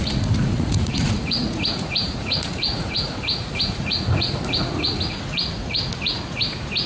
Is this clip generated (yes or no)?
yes